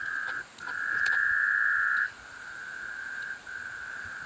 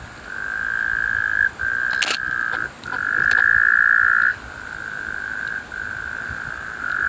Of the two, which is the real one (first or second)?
second